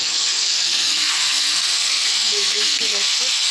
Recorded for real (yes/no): no